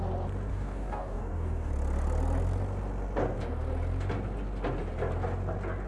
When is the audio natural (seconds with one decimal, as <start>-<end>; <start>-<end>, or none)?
0.0-0.5; 1.7-5.9